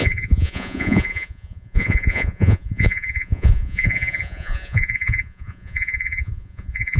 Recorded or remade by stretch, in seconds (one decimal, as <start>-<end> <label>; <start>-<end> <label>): 0.0-7.0 remade